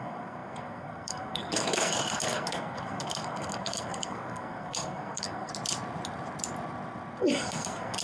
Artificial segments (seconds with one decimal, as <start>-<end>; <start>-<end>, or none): 0.0-5.5; 7.2-8.0